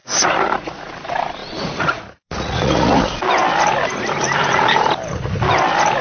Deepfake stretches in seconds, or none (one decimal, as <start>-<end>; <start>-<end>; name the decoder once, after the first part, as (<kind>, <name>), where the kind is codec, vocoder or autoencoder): 0.0-0.9 (vocoder, Vocos); 1.4-3.0